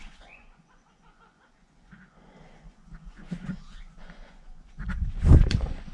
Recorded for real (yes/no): no